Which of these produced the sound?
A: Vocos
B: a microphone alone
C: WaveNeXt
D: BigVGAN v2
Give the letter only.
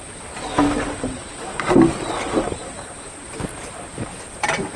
D